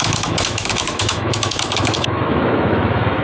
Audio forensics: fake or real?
fake